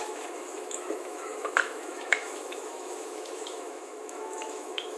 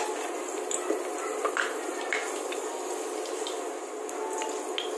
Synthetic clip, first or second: first